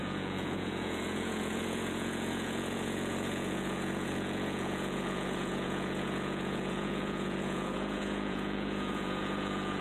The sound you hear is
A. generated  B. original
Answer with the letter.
A